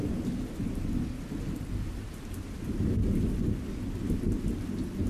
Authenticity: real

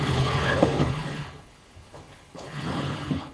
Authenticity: fake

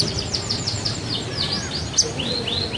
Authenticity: real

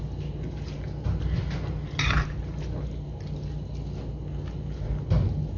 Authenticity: real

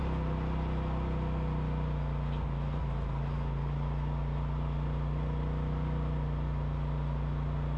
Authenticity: real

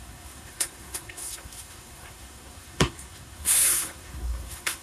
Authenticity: fake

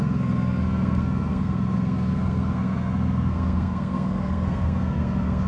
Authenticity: fake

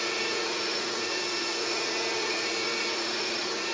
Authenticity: fake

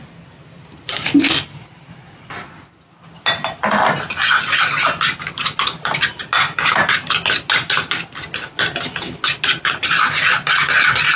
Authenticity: real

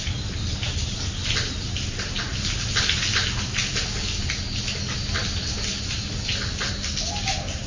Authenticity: real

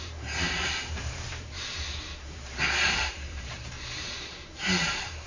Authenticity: fake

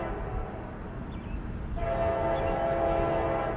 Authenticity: real